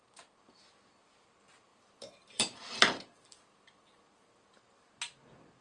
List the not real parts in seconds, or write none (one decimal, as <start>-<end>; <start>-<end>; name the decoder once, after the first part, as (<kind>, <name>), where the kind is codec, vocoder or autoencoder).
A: 1.7-4.6 (vocoder, BigVGAN v2)